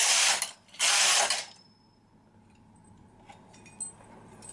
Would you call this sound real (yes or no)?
yes